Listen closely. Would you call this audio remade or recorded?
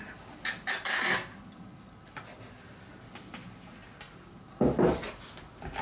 recorded